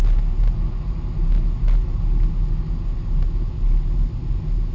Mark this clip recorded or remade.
recorded